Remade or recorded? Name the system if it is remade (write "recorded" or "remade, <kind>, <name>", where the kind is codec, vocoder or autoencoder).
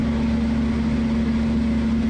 recorded